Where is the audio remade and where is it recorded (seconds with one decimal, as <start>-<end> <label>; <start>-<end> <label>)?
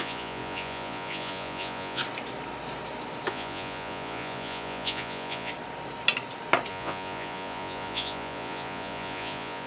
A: 0.0-2.0 remade; 2.0-3.3 recorded; 3.3-5.5 remade; 5.5-6.7 recorded; 6.7-9.7 remade